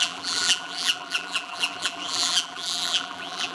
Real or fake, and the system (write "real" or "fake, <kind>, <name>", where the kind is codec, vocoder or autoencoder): fake, vocoder, BigVGAN v2